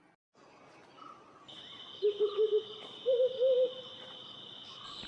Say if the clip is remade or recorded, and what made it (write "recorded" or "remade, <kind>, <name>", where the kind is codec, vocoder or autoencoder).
recorded